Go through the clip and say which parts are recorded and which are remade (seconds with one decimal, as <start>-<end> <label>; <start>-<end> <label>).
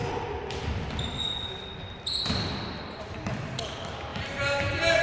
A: 0.0-5.0 recorded